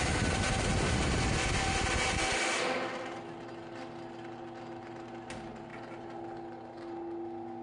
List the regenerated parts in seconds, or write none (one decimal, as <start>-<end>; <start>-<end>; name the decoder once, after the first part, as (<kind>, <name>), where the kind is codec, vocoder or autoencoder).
none